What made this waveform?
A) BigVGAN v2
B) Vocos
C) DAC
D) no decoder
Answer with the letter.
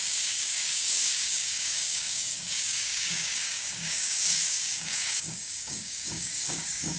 C